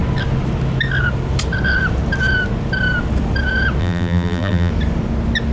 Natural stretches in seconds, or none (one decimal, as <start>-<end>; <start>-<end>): 0.0-3.8; 4.7-5.5